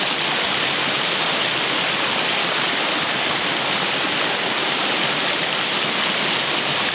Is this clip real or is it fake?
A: real